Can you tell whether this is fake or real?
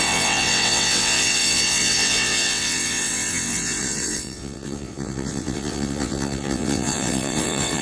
fake